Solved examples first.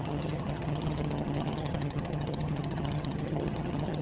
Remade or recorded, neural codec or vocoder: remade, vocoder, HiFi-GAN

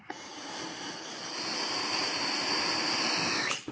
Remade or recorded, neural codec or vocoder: recorded